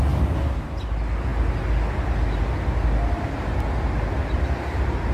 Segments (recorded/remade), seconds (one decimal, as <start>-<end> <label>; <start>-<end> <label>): 0.0-5.1 recorded